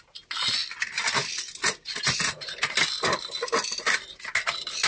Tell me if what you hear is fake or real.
real